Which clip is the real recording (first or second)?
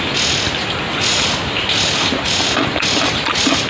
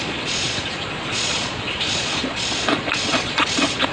first